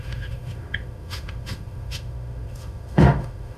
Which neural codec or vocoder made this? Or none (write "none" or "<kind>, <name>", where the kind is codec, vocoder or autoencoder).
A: autoencoder, DAC-VAE